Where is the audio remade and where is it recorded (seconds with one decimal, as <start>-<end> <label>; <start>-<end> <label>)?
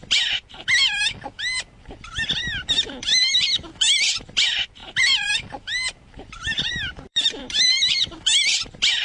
0.0-4.8 recorded; 4.8-8.2 remade; 8.2-9.0 recorded